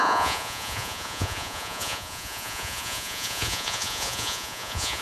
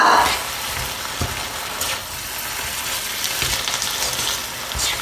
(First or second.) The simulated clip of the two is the first